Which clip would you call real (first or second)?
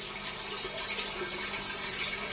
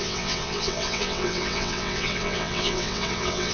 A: first